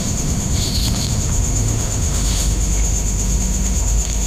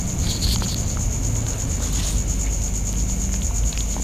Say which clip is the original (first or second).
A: second